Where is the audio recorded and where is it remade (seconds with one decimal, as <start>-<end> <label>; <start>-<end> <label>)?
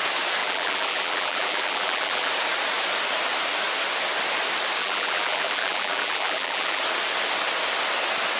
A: 0.0-0.4 recorded; 0.4-2.3 remade; 2.3-4.8 recorded; 4.8-6.8 remade; 6.8-8.4 recorded